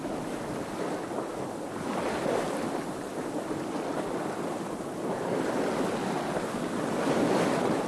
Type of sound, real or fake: real